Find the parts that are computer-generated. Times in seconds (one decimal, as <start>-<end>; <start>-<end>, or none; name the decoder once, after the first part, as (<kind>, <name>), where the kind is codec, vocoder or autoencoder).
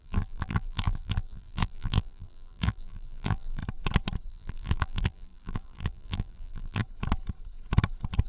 0.0-3.6 (vocoder, BigVGAN v2); 4.3-6.8